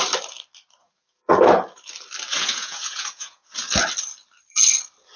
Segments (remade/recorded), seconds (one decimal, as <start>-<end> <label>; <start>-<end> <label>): 0.0-0.8 recorded; 0.8-1.3 remade; 1.3-2.3 recorded; 2.3-3.7 remade; 3.7-5.2 recorded